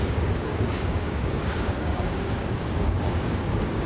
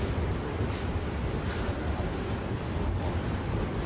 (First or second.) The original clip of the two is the second